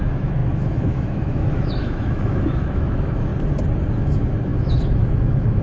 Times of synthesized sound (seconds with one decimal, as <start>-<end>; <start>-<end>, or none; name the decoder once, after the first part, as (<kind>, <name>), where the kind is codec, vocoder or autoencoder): 0.0-3.3 (autoencoder, DAC-VAE); 4.0-5.6